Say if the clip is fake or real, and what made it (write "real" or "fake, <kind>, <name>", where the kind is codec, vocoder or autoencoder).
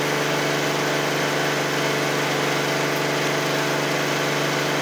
real